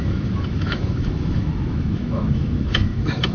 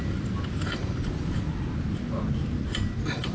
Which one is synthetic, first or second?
first